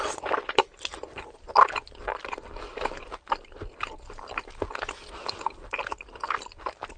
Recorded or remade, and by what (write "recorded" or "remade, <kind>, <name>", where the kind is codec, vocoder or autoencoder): recorded